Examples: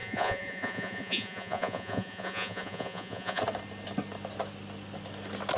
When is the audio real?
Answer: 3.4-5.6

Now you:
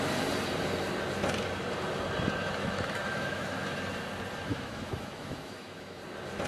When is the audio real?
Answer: 0.0-2.6; 3.8-4.5; 6.0-6.5

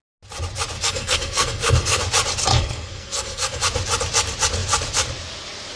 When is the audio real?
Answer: 0.0-0.8; 2.0-2.5; 3.6-5.8

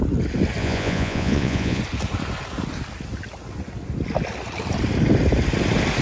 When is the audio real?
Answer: 0.0-0.6; 1.8-6.0

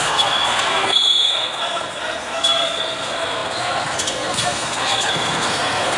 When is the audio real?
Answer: none

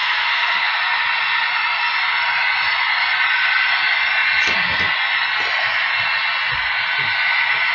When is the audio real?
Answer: 0.8-7.7

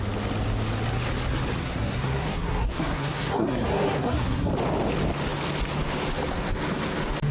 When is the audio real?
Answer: 0.0-1.6; 4.5-7.3